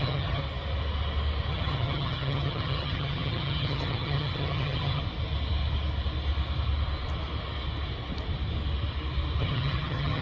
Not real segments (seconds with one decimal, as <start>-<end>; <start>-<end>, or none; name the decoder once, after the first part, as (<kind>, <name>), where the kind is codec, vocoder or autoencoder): 0.0-0.4 (vocoder, HiFi-GAN); 1.5-5.0; 9.4-10.2